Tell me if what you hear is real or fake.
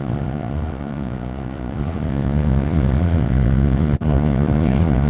fake